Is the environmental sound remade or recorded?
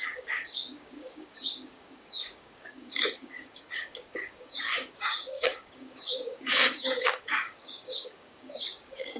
remade